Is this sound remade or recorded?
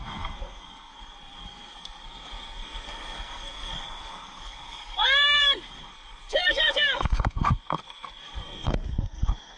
remade